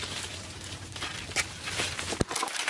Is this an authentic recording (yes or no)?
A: yes